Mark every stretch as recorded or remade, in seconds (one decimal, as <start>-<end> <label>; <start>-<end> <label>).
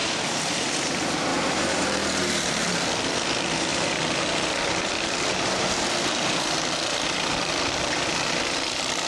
0.0-0.7 remade; 0.7-1.3 recorded; 1.3-2.7 remade; 2.7-9.1 recorded